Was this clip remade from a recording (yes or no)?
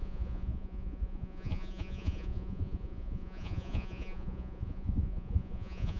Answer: yes